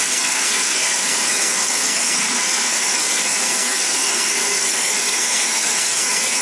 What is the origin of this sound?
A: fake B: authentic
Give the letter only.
A